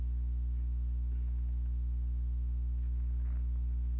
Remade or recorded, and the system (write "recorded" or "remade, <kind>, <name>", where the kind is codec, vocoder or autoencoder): recorded